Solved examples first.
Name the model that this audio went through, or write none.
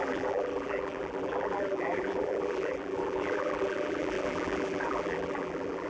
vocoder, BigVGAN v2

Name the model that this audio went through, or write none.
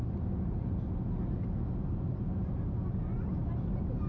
none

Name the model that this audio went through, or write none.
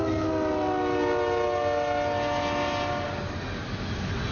none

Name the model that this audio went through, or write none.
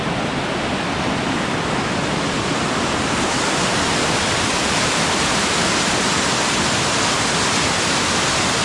vocoder, BigVGAN v2